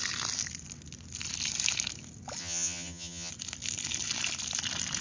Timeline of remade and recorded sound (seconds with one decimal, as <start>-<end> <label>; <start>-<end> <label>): 0.0-2.4 recorded; 2.4-3.3 remade; 3.3-5.0 recorded